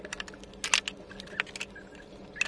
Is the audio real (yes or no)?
yes